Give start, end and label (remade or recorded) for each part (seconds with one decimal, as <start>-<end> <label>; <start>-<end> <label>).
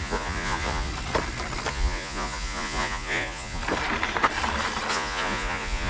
0.0-0.9 remade; 0.9-1.7 recorded; 1.7-3.6 remade; 3.6-4.9 recorded; 4.9-5.9 remade